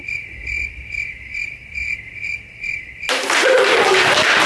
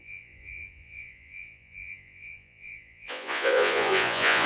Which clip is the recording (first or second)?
first